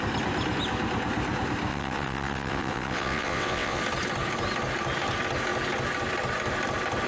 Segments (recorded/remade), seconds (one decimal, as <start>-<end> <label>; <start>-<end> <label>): 0.0-1.7 recorded; 1.7-3.8 remade; 3.8-7.1 recorded